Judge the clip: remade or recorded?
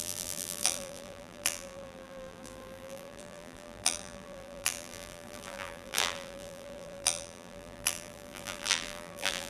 remade